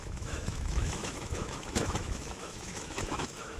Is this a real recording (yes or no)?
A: no